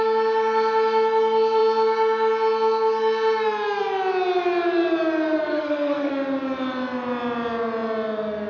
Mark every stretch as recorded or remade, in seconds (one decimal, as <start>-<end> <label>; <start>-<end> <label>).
0.0-5.5 recorded; 5.5-6.1 remade; 6.1-8.5 recorded